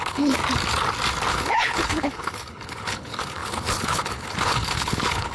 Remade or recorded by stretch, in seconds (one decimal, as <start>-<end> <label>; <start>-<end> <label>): 0.0-0.4 remade; 0.4-1.3 recorded; 1.3-5.3 remade